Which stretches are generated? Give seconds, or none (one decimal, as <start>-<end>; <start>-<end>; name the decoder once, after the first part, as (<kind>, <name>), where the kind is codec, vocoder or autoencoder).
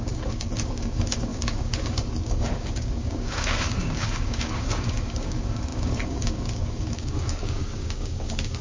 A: 0.0-8.6 (codec, DAC)